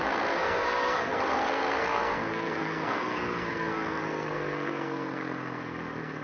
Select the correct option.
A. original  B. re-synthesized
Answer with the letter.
B